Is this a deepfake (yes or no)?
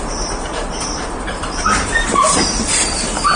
yes